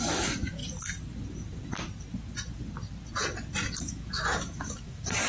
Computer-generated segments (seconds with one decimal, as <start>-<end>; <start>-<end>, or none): 0.0-0.6; 3.8-5.3